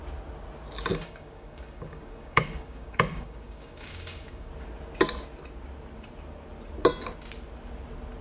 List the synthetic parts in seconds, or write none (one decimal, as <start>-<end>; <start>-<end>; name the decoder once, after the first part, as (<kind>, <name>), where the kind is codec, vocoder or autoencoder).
0.9-4.5 (codec, DAC)